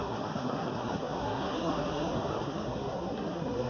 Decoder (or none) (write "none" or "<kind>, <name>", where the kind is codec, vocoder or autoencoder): codec, SNAC